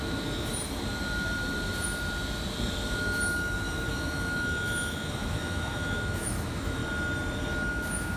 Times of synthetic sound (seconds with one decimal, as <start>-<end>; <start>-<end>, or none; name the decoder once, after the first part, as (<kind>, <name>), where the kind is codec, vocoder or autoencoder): 0.0-0.5 (autoencoder, DAC-VAE); 3.9-6.8; 7.7-8.2